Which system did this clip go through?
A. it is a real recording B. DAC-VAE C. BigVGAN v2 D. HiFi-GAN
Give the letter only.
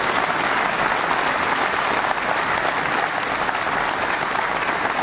A